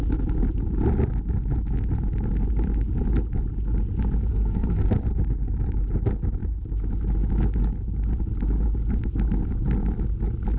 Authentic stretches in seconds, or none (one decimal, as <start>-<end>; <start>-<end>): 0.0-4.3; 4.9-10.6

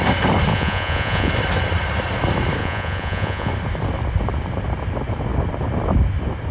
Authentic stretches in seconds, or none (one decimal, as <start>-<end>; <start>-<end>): 0.0-0.5; 1.3-2.6; 3.5-6.5

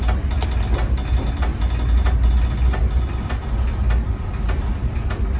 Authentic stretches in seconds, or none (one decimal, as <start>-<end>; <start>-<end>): 0.0-5.4